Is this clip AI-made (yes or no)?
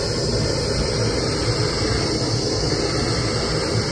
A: no